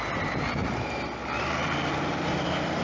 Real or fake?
real